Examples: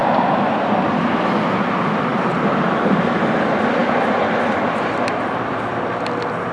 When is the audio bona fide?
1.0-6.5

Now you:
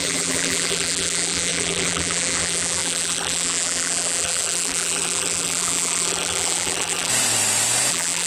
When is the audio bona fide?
7.1-7.9

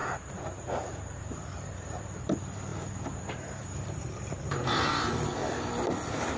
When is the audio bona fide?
5.4-6.4